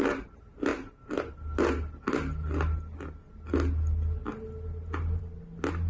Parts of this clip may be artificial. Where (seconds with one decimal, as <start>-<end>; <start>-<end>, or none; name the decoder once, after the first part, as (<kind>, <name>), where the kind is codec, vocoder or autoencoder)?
none